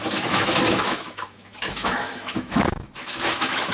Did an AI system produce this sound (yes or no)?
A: yes